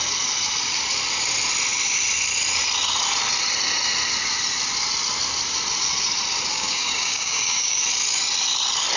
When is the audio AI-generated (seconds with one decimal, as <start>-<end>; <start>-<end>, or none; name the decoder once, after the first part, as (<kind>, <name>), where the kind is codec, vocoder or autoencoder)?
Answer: 6.5-7.8 (codec, DAC)